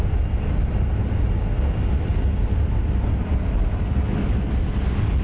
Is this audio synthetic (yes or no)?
no